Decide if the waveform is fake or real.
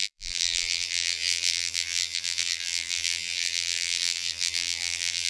fake